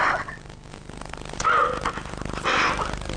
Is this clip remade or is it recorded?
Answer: recorded